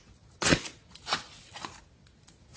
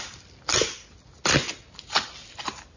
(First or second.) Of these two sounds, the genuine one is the second